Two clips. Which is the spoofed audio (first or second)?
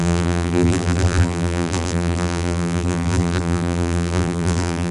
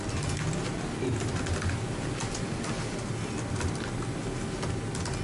first